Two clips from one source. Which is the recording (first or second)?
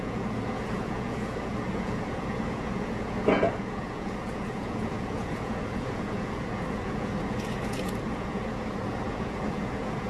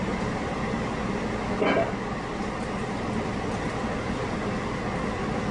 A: second